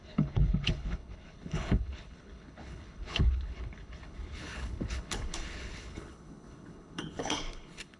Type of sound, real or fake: fake